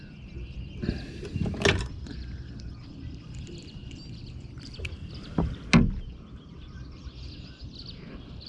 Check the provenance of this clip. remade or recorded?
recorded